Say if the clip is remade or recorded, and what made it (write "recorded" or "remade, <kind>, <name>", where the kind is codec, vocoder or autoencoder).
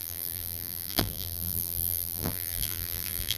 remade, vocoder, BigVGAN v2